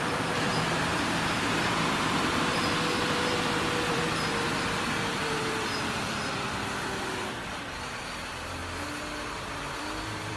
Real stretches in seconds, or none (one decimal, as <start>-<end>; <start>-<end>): 8.6-9.7